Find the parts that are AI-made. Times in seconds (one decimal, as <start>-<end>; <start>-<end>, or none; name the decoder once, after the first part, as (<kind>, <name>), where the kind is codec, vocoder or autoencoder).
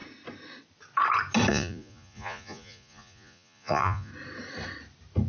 1.5-4.1 (vocoder, Vocos)